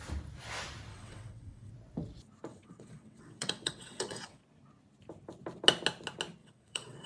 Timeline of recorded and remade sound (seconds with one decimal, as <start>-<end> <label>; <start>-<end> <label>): 0.0-0.9 recorded; 0.9-1.7 remade; 1.7-2.5 recorded; 2.5-4.4 remade; 4.4-6.4 recorded; 6.4-7.1 remade